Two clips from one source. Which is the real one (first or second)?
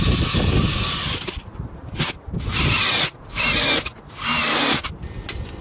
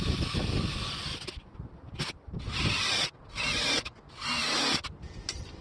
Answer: first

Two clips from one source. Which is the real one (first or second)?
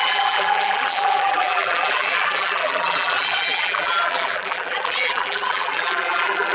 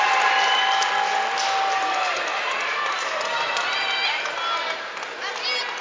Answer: second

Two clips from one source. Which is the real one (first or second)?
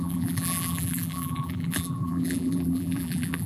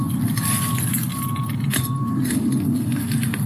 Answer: second